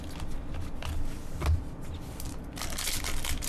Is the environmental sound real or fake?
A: real